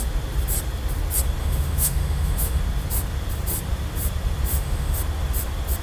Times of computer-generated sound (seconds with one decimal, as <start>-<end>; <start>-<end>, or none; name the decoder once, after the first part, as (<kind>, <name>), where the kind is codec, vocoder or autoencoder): 1.4-2.6 (autoencoder, DAC-VAE); 4.5-5.0